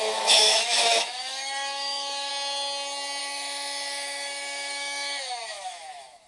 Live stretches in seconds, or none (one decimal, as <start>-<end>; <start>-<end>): 2.3-3.2